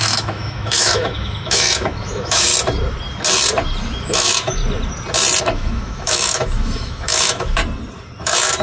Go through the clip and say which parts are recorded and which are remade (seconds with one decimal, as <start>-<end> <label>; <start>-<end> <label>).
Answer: 0.0-2.5 remade; 2.5-4.0 recorded; 4.0-4.6 remade; 4.6-5.4 recorded; 5.4-7.6 remade; 7.6-8.2 recorded; 8.2-8.6 remade